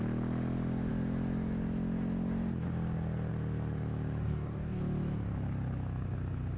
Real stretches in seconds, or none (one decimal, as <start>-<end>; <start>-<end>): 0.0-4.2; 4.8-6.6